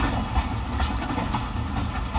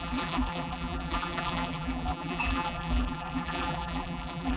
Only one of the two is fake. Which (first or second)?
second